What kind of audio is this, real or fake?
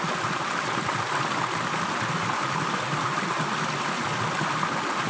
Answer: real